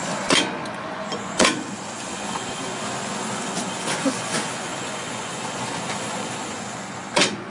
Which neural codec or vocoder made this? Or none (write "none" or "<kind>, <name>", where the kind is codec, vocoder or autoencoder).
vocoder, Vocos